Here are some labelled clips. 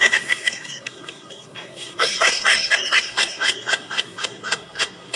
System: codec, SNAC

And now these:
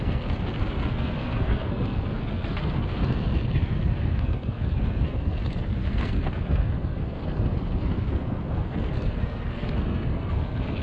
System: codec, SNAC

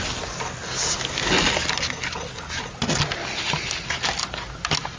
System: none